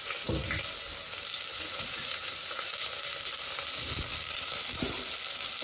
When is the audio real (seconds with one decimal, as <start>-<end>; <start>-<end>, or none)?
0.0-1.5; 2.7-5.6